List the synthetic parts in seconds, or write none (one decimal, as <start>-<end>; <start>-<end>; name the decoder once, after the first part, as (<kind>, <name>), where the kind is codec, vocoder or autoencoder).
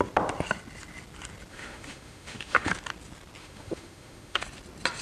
1.5-2.7 (autoencoder, DAC-VAE); 3.4-4.4